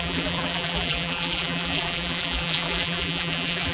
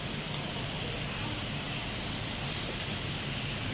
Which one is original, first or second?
second